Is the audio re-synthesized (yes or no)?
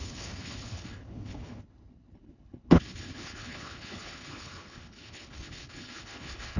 yes